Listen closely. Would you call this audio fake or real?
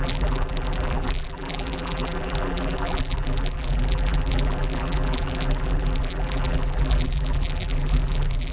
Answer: fake